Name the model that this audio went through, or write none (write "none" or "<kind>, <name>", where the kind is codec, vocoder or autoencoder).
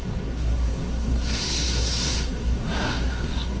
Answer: codec, SNAC